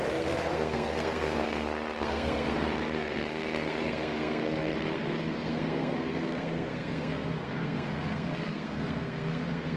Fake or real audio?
fake